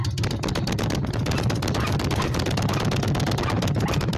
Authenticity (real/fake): real